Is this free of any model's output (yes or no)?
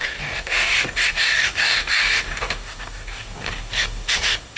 no